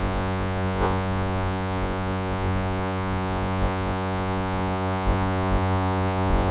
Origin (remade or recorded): remade